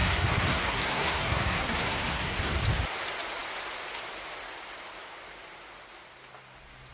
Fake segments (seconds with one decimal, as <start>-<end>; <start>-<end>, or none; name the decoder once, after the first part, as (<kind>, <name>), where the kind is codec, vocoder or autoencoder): 0.0-2.6 (codec, SNAC)